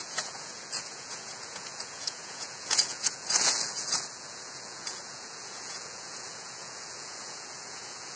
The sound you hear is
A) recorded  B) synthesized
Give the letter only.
B